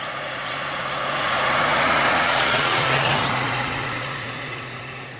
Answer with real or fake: fake